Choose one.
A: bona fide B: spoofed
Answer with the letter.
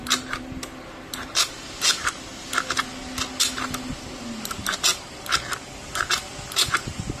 A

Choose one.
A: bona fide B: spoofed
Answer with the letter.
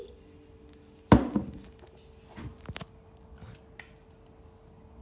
A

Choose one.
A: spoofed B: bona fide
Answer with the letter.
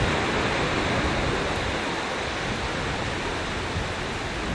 B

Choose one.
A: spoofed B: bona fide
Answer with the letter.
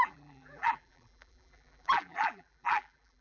A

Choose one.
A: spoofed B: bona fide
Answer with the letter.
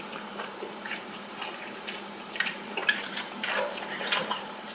A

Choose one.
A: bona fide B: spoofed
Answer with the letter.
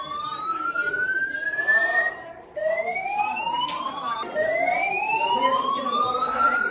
B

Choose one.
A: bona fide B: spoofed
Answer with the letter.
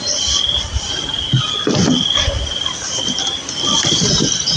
B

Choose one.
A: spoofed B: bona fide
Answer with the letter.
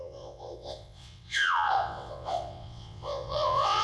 A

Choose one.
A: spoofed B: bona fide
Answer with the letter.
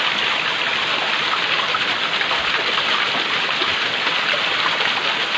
B